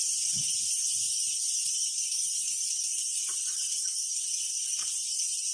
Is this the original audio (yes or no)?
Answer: no